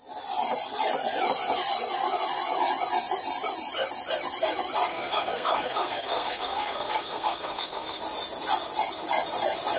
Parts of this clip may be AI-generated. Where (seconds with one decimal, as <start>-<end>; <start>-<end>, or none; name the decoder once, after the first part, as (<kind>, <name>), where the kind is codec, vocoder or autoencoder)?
4.9-8.0 (codec, SNAC)